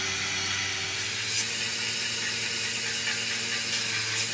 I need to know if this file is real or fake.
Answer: real